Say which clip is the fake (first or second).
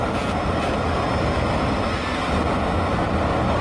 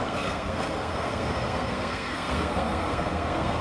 second